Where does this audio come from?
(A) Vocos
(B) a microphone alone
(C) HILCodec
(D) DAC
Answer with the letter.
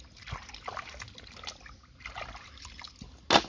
B